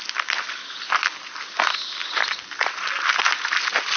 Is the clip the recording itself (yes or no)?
yes